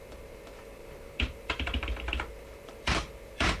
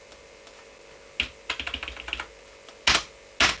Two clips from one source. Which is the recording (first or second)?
second